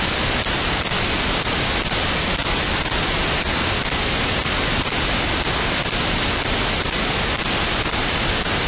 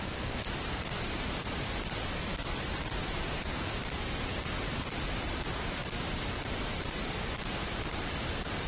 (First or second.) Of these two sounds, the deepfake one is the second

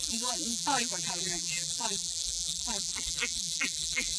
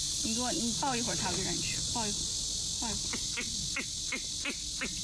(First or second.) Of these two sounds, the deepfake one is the first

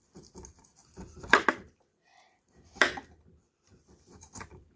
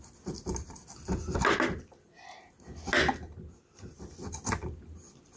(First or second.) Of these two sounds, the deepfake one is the first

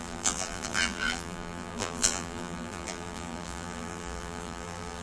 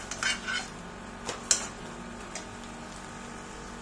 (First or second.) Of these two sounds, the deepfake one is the first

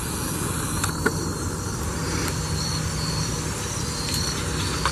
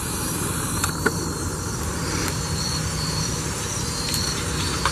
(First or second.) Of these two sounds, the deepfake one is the second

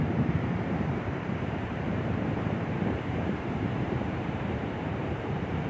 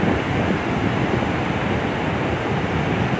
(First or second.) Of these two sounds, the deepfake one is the first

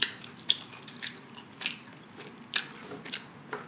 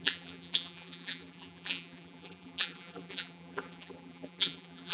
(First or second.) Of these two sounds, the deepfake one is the second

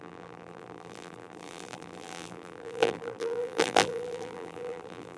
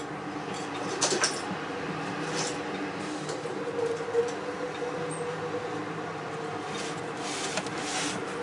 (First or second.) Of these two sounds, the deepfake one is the first